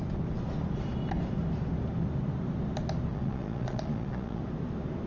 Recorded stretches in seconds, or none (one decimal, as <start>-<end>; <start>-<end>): 0.0-3.1; 4.4-5.1